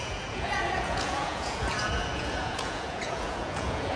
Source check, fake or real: fake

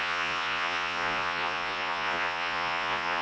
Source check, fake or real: fake